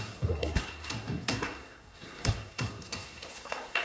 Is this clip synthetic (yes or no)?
yes